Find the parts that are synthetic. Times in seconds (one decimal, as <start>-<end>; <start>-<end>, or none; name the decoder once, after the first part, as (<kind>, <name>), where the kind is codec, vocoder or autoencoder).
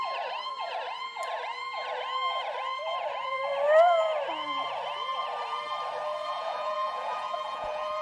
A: 6.2-8.0 (vocoder, Vocos)